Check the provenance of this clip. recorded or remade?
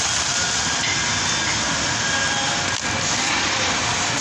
recorded